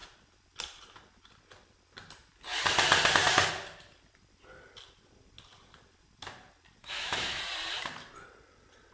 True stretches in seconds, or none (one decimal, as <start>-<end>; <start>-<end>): 0.0-6.8; 7.4-8.9